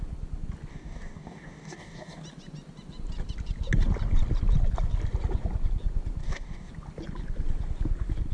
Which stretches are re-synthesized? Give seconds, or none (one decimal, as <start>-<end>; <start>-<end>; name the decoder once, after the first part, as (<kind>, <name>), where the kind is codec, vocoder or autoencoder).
0.7-2.2 (codec, DAC); 6.2-6.7